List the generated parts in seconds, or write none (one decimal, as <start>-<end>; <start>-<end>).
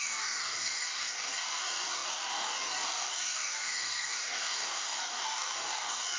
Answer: 0.0-6.2